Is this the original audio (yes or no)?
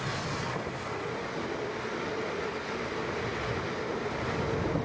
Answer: yes